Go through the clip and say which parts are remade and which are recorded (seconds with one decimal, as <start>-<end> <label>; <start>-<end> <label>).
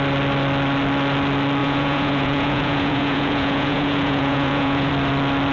0.0-1.6 recorded; 1.6-4.9 remade; 4.9-5.5 recorded